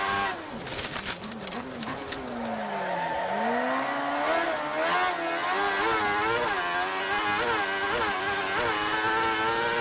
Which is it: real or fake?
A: real